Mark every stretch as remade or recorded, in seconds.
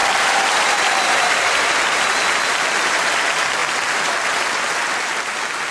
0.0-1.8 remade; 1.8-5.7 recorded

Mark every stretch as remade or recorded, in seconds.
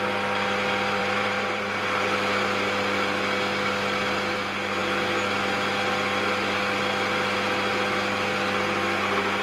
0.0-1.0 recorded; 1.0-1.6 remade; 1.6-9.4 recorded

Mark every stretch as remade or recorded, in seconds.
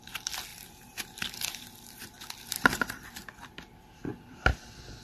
0.0-0.5 recorded; 0.5-2.2 remade; 2.2-4.1 recorded; 4.1-5.0 remade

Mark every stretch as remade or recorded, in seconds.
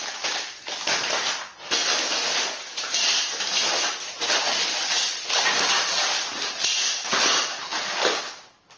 0.0-2.7 recorded; 2.7-3.9 remade; 3.9-8.8 recorded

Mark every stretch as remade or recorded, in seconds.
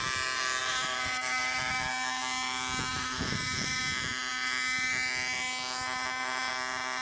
0.0-0.6 recorded; 0.6-1.9 remade; 1.9-2.9 recorded; 2.9-3.8 remade; 3.8-7.0 recorded